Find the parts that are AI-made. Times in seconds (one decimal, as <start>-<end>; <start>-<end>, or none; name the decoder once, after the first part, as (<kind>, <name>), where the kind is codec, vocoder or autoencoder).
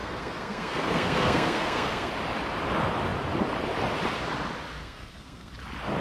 0.0-2.1 (codec, SNAC); 4.8-5.5